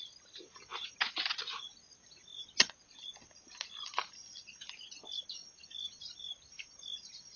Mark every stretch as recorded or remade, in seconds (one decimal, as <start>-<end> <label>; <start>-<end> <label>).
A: 0.0-4.0 recorded; 4.0-5.2 remade; 5.2-7.4 recorded